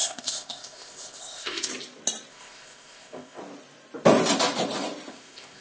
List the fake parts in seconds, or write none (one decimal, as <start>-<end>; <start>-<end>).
0.0-1.7; 2.3-3.4; 5.1-5.6